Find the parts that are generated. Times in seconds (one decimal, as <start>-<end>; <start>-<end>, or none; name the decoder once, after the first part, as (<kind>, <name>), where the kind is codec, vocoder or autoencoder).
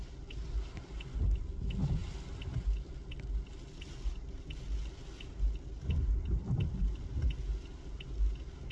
none